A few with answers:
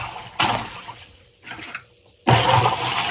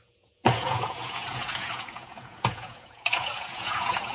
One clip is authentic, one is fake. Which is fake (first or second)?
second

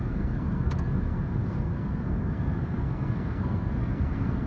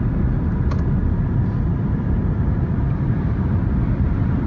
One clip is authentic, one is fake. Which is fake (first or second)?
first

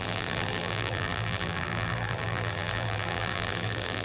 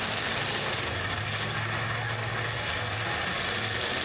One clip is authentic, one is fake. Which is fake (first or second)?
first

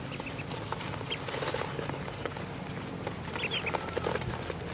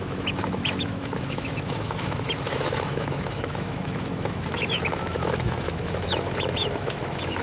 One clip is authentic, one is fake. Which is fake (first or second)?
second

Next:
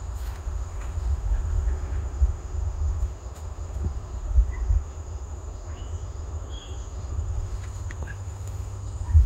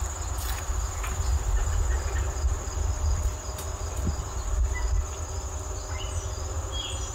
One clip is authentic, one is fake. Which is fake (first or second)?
first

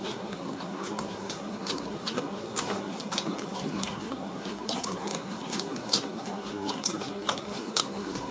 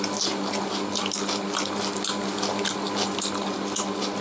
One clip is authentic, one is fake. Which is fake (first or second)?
first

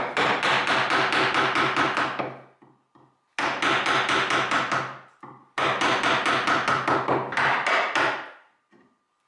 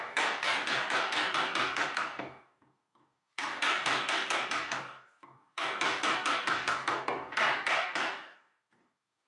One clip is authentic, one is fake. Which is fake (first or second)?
second